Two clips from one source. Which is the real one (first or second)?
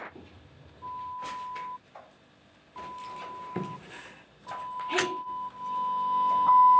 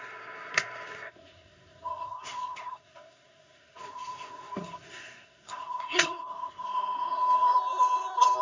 first